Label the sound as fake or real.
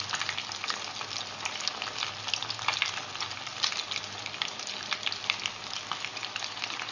real